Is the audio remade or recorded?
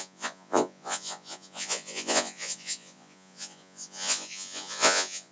remade